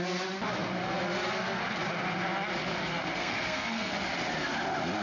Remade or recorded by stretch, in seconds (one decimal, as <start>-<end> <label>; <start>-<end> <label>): 0.0-3.2 recorded; 3.2-3.9 remade; 3.9-5.0 recorded